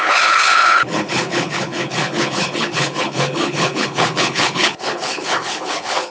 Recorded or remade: remade